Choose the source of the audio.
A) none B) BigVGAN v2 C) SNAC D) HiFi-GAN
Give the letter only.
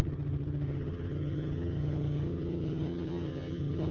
D